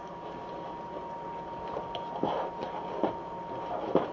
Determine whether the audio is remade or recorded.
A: recorded